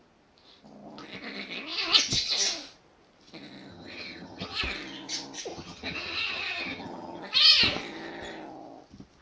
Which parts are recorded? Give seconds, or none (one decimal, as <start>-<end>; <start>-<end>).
0.0-3.7; 4.6-5.5; 7.2-9.2